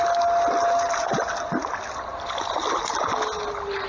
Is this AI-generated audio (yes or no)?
no